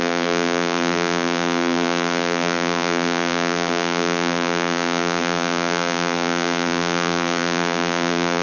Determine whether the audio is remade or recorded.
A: remade